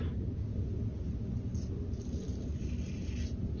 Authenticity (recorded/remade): recorded